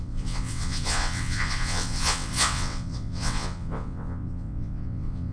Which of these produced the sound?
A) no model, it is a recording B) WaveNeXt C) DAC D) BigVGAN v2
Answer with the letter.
B